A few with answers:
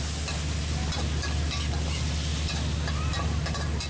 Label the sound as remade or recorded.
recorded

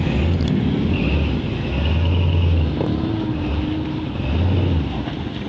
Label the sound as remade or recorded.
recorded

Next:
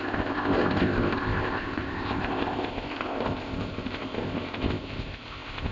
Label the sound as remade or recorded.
remade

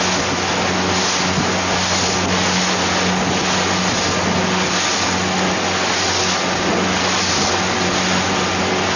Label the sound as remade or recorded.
recorded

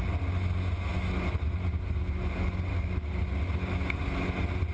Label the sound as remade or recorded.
recorded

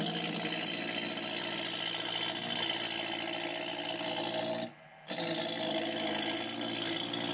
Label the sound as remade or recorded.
recorded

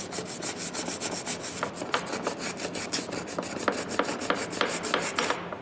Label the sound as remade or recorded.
recorded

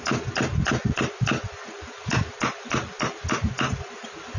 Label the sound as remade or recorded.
recorded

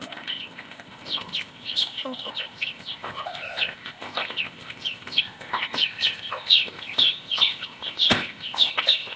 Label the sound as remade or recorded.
remade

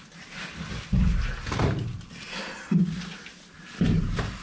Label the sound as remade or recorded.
recorded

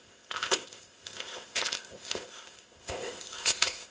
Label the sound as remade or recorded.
remade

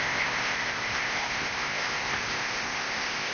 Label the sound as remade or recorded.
remade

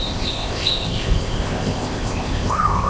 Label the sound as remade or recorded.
remade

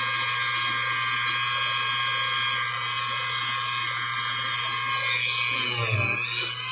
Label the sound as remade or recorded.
recorded